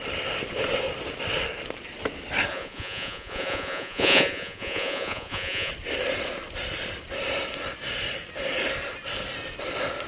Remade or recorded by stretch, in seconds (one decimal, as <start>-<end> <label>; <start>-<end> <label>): 0.0-2.5 recorded; 2.5-5.7 remade; 5.7-10.1 recorded